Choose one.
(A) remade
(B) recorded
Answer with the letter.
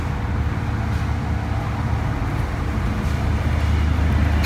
B